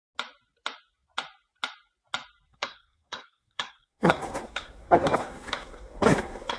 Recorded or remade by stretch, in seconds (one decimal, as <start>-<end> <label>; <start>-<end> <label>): 0.0-2.5 recorded; 2.5-6.6 remade